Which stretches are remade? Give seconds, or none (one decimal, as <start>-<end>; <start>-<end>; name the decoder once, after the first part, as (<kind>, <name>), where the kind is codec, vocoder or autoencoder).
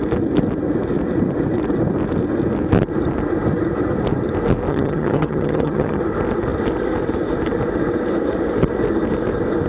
4.7-6.0 (vocoder, HiFi-GAN)